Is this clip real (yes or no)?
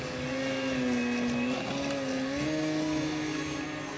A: yes